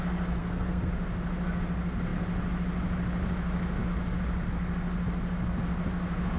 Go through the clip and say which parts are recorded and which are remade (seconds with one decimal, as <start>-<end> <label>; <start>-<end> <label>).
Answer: 0.0-0.4 recorded; 0.4-0.9 remade; 0.9-6.4 recorded